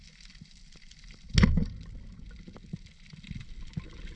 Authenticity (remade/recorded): recorded